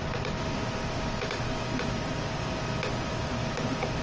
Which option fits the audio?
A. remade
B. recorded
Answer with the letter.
B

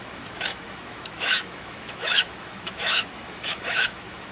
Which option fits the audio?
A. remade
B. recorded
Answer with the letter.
A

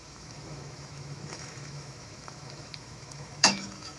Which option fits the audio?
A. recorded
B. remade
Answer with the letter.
B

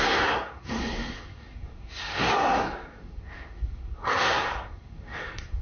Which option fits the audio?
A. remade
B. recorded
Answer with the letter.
A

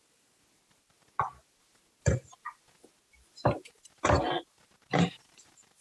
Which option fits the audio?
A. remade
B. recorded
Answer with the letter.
B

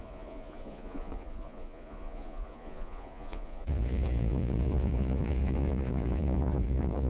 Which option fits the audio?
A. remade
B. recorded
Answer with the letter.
A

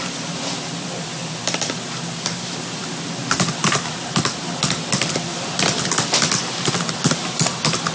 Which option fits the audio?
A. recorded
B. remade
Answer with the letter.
B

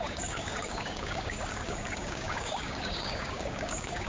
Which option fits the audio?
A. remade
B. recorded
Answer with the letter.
A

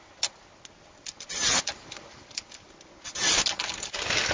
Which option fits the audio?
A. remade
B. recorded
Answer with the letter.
B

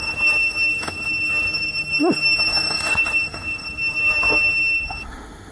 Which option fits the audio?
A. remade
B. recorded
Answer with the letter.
A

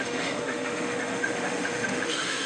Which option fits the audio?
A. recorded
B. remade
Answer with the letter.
B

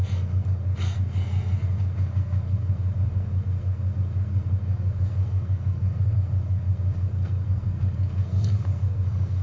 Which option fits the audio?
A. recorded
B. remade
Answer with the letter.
B